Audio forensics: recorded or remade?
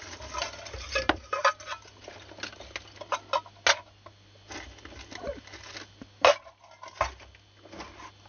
recorded